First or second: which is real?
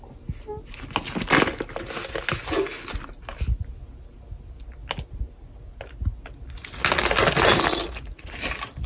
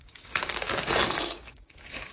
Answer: first